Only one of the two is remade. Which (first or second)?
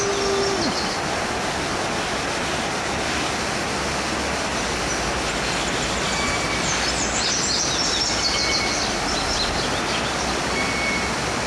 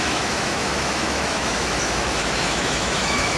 second